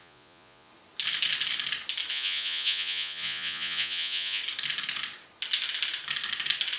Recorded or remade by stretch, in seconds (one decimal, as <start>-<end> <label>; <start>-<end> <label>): 0.0-0.7 remade; 0.7-2.1 recorded; 2.1-4.4 remade; 4.4-6.8 recorded